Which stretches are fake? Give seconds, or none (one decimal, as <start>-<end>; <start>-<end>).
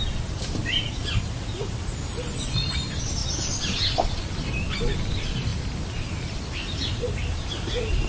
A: none